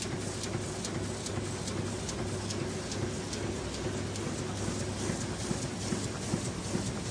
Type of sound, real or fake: real